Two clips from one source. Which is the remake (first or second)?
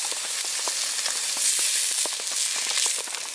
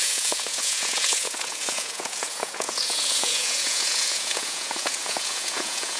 second